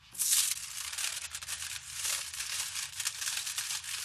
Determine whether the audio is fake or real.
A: real